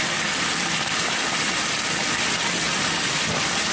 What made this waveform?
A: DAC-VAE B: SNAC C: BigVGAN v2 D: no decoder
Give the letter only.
C